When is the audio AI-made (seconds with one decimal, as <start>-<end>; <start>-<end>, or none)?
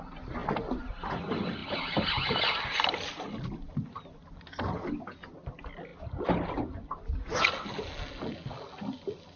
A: none